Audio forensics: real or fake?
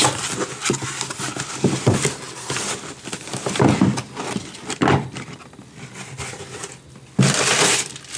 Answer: real